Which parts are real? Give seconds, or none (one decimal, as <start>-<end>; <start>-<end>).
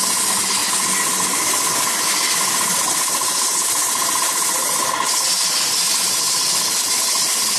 0.0-7.6